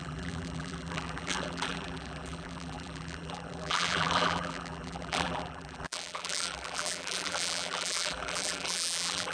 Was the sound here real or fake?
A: fake